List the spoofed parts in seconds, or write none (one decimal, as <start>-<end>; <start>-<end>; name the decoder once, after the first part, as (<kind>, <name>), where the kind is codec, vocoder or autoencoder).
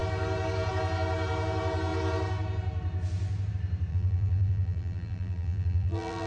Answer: 3.9-6.3 (vocoder, BigVGAN v2)